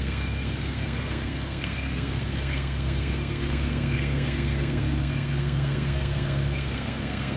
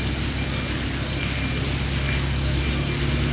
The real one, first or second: second